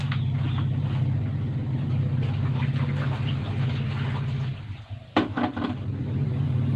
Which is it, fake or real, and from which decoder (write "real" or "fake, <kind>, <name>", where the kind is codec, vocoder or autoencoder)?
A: real